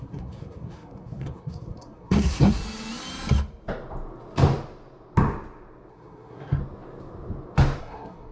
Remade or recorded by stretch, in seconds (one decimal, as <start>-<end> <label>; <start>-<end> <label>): 0.0-2.6 remade; 2.6-5.9 recorded; 5.9-6.6 remade; 6.6-7.8 recorded; 7.8-8.3 remade